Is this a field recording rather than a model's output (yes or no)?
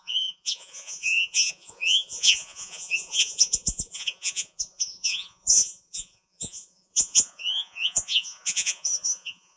no